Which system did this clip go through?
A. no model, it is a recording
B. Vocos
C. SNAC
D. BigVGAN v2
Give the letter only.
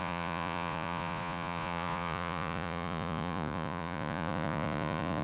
B